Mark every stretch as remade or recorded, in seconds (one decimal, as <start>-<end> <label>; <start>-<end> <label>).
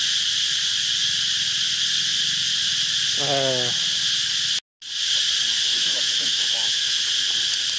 0.0-5.7 recorded; 5.7-7.0 remade; 7.0-7.8 recorded